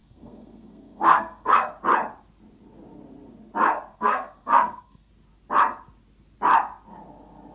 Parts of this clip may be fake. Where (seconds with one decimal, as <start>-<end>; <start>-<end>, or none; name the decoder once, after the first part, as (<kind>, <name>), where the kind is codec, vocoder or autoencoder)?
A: 0.0-1.7 (codec, SNAC); 3.9-5.1